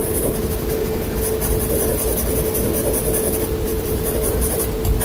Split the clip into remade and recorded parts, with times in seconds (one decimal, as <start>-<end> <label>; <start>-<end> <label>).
0.0-3.7 recorded; 3.7-4.6 remade; 4.6-5.0 recorded